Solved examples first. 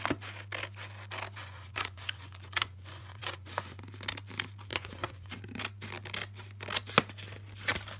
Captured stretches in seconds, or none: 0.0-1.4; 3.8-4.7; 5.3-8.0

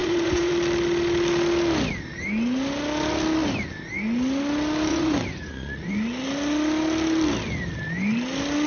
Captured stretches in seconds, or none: 0.5-4.9; 5.9-8.7